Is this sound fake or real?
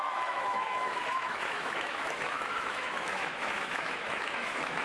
fake